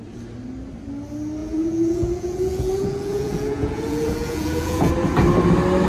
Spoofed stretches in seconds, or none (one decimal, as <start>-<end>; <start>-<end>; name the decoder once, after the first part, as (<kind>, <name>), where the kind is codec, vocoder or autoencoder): 1.4-4.9 (vocoder, Vocos)